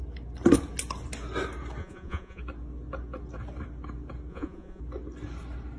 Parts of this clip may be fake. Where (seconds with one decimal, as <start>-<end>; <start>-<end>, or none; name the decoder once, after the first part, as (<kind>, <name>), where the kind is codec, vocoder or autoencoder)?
1.8-2.4 (vocoder, Vocos); 4.3-4.8